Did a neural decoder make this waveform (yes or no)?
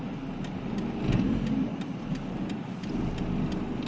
no